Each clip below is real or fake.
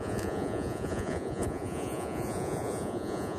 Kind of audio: fake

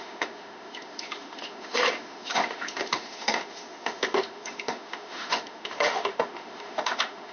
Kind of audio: fake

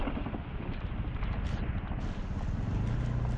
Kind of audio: real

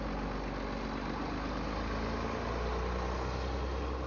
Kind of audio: real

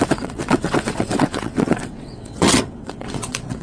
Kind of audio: fake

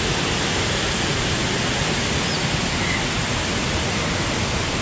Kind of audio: real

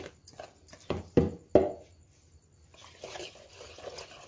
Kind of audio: real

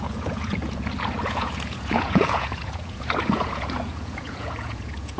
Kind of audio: fake